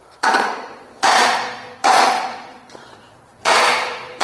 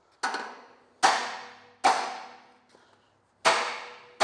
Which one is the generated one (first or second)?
first